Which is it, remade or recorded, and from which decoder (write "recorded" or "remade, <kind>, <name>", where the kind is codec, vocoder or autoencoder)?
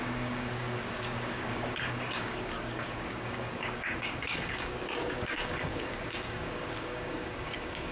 remade, codec, DAC